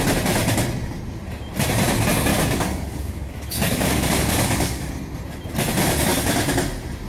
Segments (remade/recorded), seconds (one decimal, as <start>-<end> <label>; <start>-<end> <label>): 0.0-2.3 recorded; 2.3-4.9 remade; 4.9-7.1 recorded